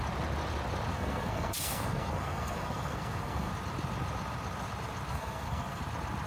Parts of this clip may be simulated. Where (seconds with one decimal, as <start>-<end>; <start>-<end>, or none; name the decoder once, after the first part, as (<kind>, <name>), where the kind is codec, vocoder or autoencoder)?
0.9-3.5 (codec, SNAC); 5.1-5.8